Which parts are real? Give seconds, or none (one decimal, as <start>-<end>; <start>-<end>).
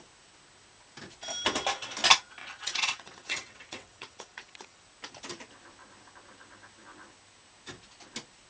0.0-2.4; 4.8-8.5